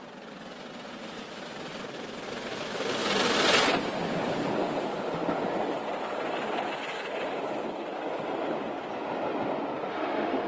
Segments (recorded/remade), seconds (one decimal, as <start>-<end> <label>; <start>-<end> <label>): 0.0-9.9 recorded; 9.9-10.5 remade